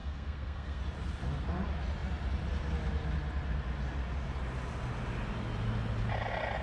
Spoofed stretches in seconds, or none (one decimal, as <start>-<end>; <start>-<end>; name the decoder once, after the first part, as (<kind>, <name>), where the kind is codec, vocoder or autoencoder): 0.0-0.8 (codec, SNAC)